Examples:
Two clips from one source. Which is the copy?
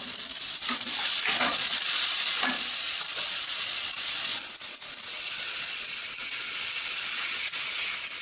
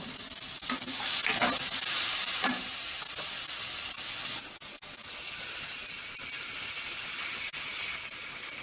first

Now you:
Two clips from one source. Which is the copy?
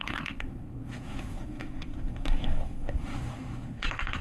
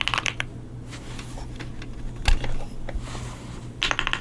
first